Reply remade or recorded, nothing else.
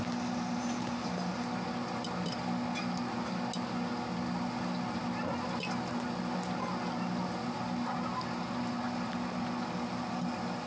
recorded